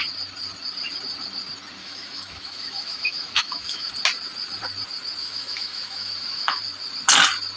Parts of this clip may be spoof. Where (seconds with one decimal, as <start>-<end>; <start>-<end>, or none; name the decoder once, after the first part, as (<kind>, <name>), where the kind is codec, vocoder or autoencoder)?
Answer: 1.8-3.9 (autoencoder, DAC-VAE); 5.2-6.6